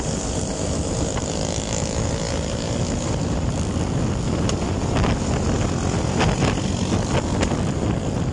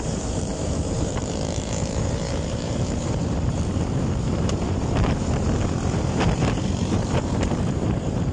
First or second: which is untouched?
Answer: first